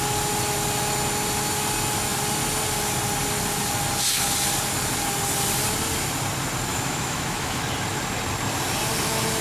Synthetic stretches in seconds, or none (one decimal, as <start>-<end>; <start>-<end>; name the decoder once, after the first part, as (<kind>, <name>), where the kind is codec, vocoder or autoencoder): 6.7-7.6 (autoencoder, DAC-VAE)